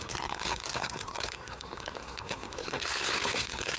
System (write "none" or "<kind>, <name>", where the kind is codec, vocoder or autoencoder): codec, SNAC